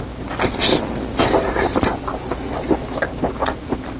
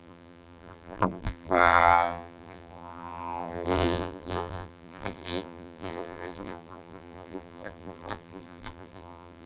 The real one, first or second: first